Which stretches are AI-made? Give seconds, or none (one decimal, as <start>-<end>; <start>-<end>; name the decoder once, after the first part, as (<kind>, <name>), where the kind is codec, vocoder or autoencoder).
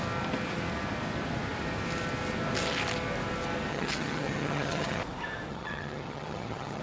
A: 3.7-5.0 (vocoder, HiFi-GAN); 5.5-6.8